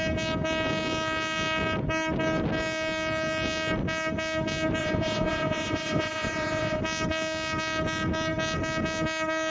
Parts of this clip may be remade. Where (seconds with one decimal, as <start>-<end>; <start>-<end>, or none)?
4.8-6.8